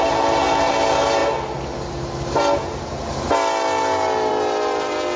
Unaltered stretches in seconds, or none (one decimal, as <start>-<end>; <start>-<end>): 0.0-5.2